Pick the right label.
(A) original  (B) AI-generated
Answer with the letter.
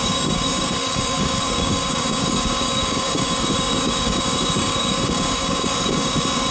B